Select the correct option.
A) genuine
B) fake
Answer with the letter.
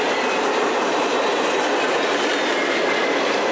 A